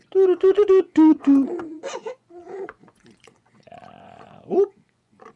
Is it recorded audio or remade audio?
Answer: remade